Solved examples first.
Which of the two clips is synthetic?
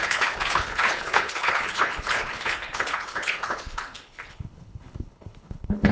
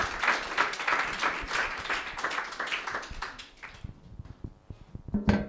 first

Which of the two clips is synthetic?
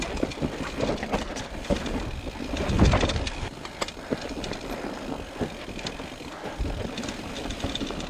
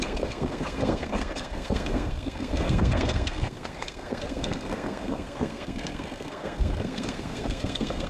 second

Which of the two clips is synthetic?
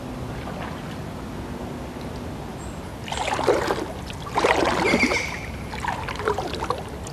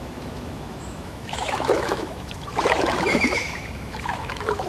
second